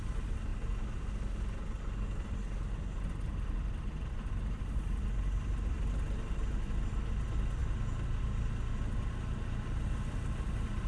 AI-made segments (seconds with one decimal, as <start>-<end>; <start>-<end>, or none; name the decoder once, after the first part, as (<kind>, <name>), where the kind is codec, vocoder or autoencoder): none